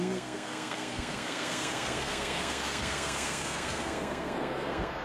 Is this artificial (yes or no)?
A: yes